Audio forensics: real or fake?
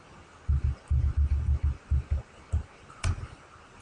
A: real